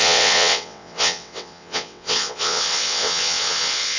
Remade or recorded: remade